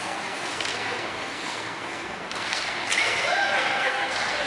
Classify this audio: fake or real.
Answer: fake